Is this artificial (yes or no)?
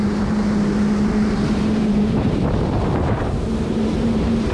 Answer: yes